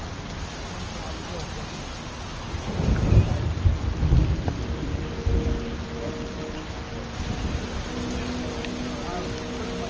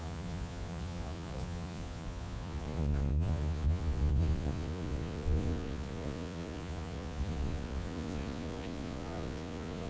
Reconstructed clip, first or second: second